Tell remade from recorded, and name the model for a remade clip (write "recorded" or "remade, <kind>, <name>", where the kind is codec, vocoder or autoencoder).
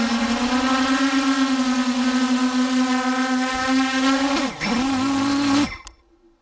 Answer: recorded